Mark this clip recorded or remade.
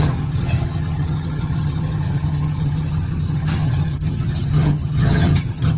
remade